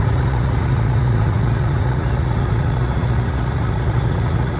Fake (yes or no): yes